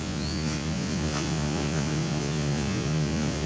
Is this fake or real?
fake